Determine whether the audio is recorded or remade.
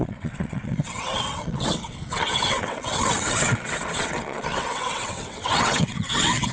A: remade